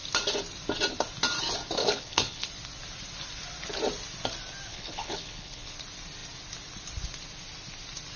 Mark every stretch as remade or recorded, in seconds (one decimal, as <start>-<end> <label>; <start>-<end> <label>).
0.0-1.8 recorded; 1.8-2.5 remade; 2.5-4.7 recorded; 4.7-5.7 remade; 5.7-8.2 recorded